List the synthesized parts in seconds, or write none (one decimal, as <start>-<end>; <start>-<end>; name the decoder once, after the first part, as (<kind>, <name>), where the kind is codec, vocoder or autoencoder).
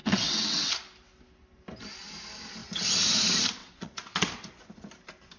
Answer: 0.0-0.7 (vocoder, WaveNeXt); 3.6-4.3